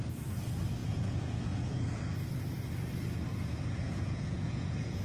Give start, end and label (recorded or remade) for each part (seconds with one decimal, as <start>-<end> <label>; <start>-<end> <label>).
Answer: 0.0-0.8 recorded; 0.8-2.0 remade; 2.0-3.3 recorded; 3.3-5.0 remade